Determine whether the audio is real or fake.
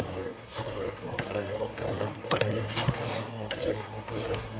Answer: fake